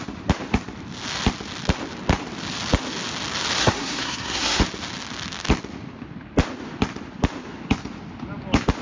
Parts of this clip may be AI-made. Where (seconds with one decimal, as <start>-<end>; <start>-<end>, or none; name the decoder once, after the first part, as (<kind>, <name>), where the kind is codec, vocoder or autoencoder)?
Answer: 3.6-4.6 (codec, SNAC)